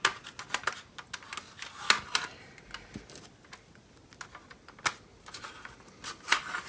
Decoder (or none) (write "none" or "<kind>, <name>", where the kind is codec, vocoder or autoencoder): none